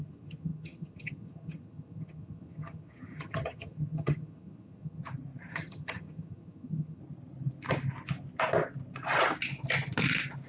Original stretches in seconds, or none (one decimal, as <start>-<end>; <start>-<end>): 5.0-5.5; 7.0-10.5